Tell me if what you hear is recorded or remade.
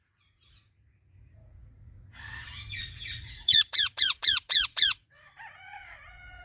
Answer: remade